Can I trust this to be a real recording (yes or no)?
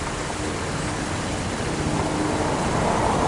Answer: yes